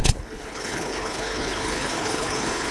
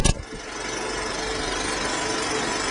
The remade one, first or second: first